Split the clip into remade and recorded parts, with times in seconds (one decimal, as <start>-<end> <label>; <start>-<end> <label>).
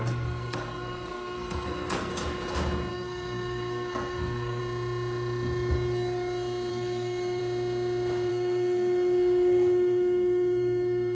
0.0-2.1 remade; 2.1-2.9 recorded; 2.9-4.6 remade; 4.6-6.7 recorded; 6.7-7.4 remade; 7.4-8.3 recorded; 8.3-11.1 remade